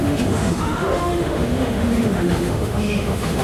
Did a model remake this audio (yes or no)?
yes